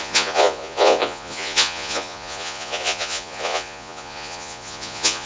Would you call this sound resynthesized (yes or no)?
yes